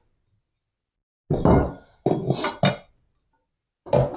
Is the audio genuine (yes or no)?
yes